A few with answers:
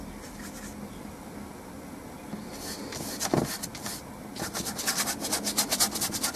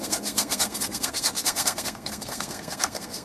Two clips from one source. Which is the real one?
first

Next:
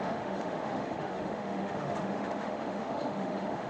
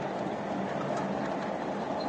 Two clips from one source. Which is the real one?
second